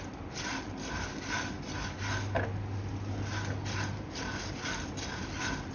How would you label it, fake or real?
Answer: real